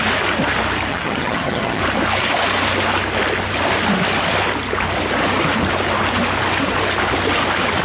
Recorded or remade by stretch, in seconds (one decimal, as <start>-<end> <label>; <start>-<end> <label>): 0.0-0.9 recorded; 0.9-1.8 remade; 1.8-7.8 recorded